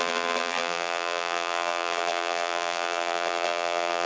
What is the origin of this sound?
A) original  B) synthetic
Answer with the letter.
B